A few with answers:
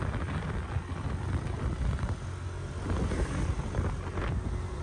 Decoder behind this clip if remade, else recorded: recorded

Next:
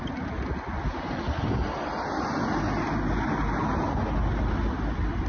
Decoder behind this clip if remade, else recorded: recorded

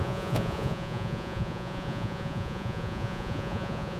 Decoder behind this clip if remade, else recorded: remade, vocoder, Vocos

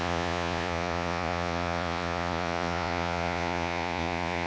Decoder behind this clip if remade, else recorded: remade, vocoder, Vocos